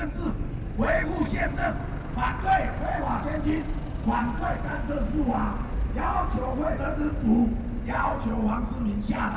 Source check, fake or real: real